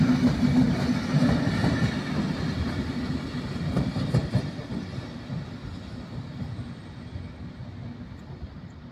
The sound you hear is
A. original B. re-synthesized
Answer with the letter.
A